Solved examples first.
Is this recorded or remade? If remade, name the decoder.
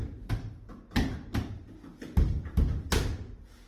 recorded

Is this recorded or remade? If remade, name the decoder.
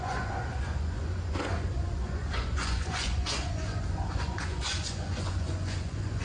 remade, vocoder, Vocos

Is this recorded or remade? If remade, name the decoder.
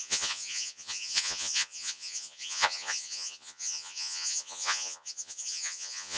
remade, vocoder, Vocos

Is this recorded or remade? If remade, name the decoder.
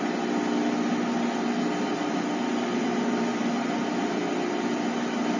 recorded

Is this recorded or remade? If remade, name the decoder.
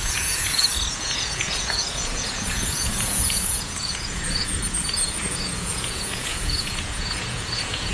remade, vocoder, Vocos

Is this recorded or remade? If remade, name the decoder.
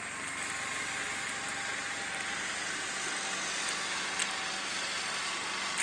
recorded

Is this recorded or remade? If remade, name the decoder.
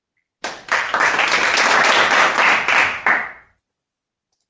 recorded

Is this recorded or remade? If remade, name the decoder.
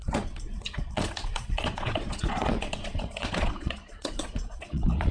remade, vocoder, Vocos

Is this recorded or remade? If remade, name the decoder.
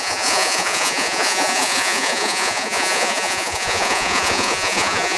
remade, vocoder, Vocos